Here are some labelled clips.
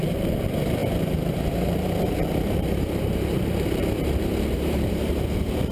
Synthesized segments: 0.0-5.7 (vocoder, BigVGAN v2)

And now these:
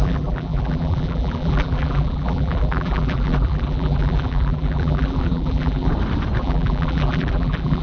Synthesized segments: 0.0-5.9 (vocoder, BigVGAN v2); 6.4-7.8

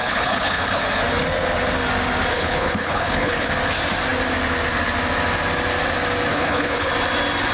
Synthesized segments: 0.0-0.8 (codec, HILCodec); 2.3-3.5; 6.3-6.9

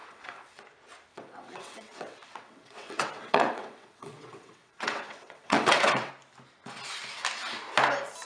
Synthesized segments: 0.0-0.6 (vocoder, WaveNeXt); 1.1-6.1

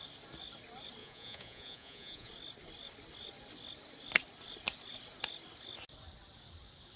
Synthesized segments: 1.0-2.3 (vocoder, Vocos)